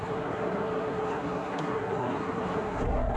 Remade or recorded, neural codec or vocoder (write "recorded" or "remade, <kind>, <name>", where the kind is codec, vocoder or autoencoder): remade, codec, SNAC